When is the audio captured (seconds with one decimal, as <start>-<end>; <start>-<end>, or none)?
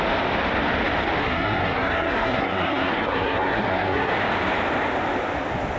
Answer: 0.0-1.2; 4.1-5.8